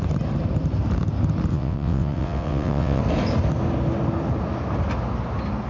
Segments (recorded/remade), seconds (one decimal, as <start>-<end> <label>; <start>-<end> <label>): 0.0-1.5 recorded; 1.5-3.0 remade; 3.0-5.7 recorded